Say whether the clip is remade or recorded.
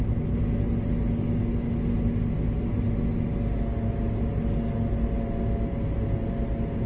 recorded